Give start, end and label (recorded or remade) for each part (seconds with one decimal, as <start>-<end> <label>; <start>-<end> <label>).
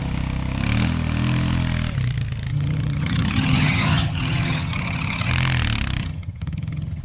0.0-2.5 recorded; 2.5-5.3 remade; 5.3-6.0 recorded; 6.0-7.0 remade